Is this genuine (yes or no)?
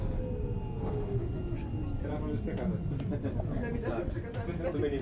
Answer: yes